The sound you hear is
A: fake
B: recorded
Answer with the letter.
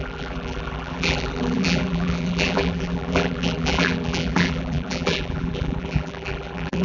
A